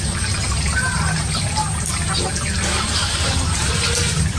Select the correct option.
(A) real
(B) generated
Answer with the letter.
A